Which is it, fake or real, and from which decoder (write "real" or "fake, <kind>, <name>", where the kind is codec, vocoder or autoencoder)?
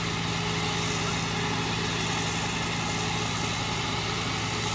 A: real